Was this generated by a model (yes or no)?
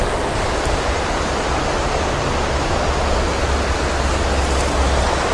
no